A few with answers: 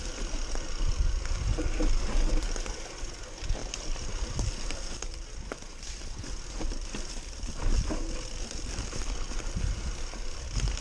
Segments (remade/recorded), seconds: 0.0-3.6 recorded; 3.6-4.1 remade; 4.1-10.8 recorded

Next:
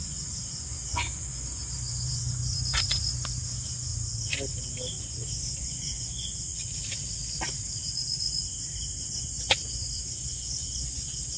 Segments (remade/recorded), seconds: 0.0-3.9 remade; 3.9-5.0 recorded; 5.0-6.5 remade; 6.5-9.1 recorded; 9.1-11.4 remade

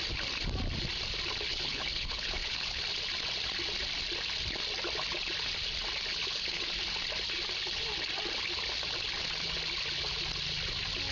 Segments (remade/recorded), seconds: 0.0-1.5 recorded; 1.5-2.8 remade; 2.8-6.1 recorded; 6.1-6.7 remade; 6.7-11.1 recorded

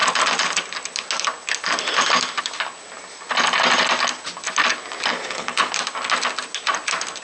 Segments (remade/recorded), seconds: 0.0-5.1 recorded; 5.1-5.7 remade; 5.7-7.2 recorded

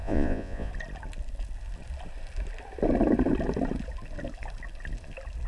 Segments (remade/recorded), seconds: 0.0-0.7 remade; 0.7-5.5 recorded

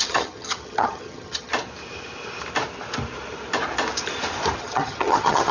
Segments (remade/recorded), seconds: 0.0-1.5 remade; 1.5-4.6 recorded; 4.6-5.5 remade